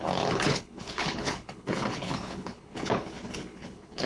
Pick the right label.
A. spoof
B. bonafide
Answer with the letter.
A